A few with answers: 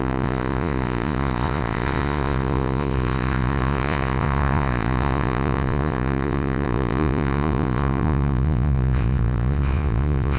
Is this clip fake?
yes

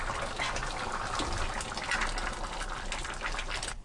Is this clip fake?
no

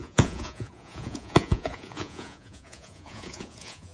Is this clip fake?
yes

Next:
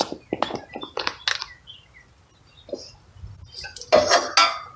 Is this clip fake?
no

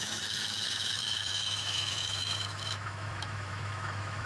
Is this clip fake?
yes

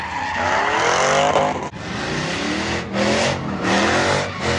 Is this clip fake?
no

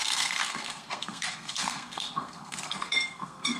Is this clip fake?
yes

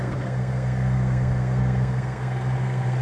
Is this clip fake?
yes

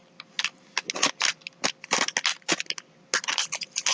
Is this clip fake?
no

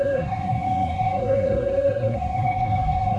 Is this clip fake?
yes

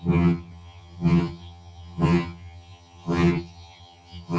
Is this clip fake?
yes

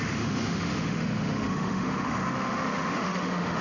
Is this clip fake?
yes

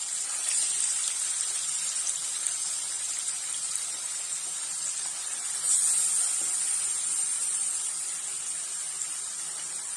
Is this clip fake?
no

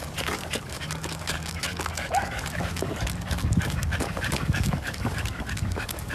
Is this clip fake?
yes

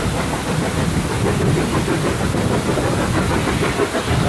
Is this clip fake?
no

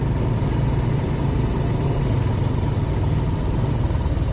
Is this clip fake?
no